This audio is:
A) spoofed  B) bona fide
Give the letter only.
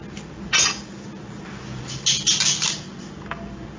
B